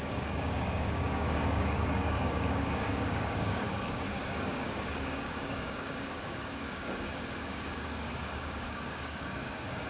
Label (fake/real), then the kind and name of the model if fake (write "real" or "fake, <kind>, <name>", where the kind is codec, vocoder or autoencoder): fake, codec, DAC